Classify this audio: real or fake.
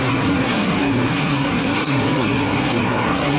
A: fake